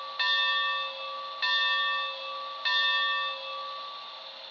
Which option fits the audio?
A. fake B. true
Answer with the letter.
B